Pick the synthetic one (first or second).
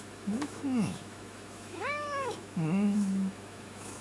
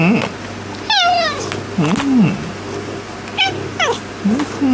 first